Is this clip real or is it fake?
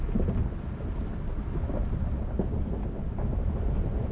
real